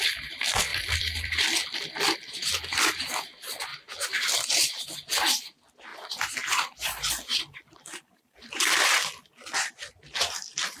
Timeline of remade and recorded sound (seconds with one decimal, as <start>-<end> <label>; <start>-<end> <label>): 0.0-0.7 recorded; 0.7-2.8 remade; 2.8-5.9 recorded; 5.9-9.7 remade; 9.7-10.8 recorded